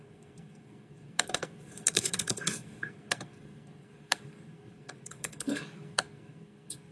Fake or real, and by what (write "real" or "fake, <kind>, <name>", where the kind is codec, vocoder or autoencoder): fake, codec, SNAC